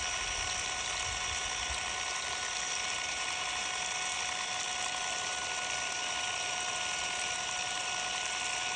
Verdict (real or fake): real